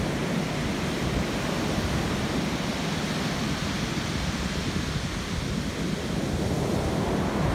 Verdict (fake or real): real